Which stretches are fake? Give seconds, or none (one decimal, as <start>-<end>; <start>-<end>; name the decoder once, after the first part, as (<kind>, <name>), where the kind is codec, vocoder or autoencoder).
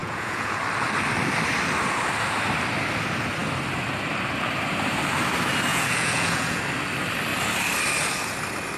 0.0-0.6 (vocoder, Vocos); 5.7-6.6